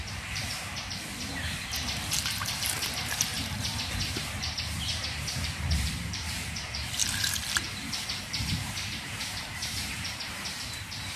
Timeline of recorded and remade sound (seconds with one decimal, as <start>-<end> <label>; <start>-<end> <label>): 0.0-11.2 remade